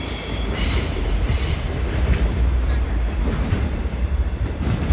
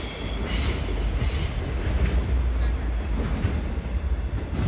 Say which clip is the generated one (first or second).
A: first